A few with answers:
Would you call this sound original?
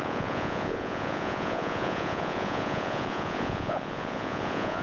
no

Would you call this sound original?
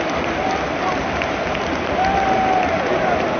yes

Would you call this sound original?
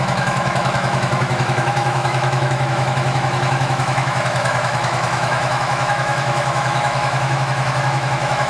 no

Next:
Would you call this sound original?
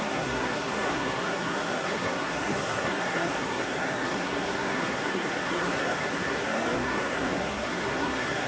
no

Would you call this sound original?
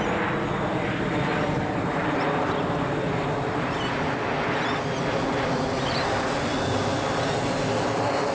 yes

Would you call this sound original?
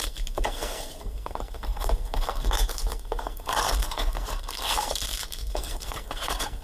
no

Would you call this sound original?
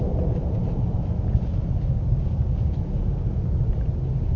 yes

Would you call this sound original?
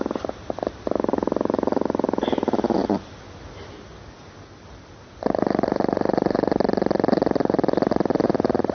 yes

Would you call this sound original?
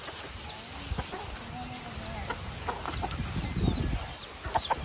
yes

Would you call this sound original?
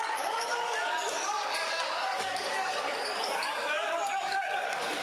no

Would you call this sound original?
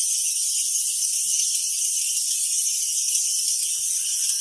no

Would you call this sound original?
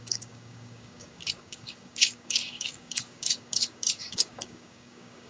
no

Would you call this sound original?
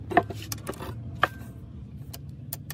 yes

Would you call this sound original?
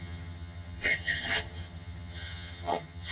no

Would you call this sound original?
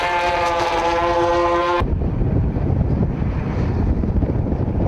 no